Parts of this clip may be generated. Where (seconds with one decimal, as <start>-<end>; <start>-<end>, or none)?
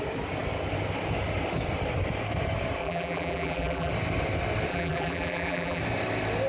2.8-3.9; 4.7-5.8